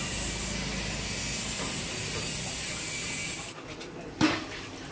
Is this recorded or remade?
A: recorded